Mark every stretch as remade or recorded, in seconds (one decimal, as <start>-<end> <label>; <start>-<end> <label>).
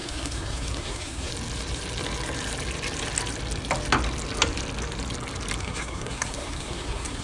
0.0-1.3 remade; 1.3-5.6 recorded; 5.6-7.2 remade